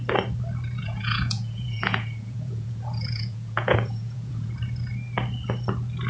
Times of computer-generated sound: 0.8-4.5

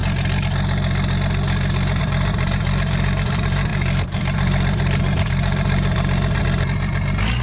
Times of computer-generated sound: 2.0-7.4

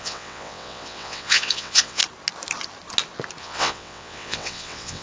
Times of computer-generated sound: 0.0-2.0; 3.4-5.0

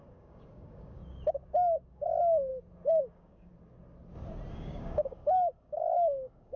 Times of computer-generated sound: 0.0-1.0; 1.9-2.5; 3.0-3.5; 4.5-6.6

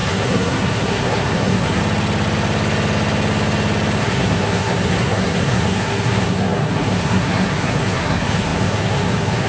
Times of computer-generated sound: 0.0-1.8; 4.0-9.5

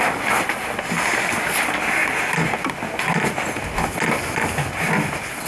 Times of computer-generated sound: none

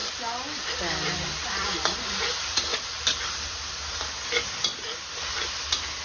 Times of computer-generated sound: 0.0-3.3